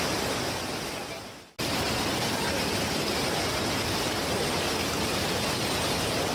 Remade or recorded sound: recorded